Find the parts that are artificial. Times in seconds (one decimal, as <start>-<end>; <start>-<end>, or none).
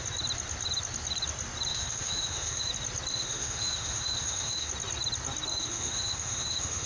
1.7-2.7; 3.1-4.7; 5.5-6.9